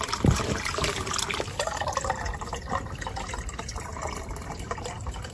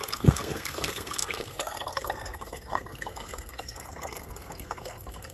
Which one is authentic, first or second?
first